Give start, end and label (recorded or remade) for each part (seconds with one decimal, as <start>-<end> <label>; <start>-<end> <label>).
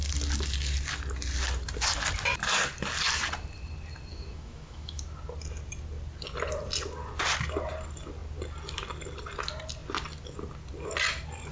0.0-4.1 recorded; 4.1-5.0 remade; 5.0-11.5 recorded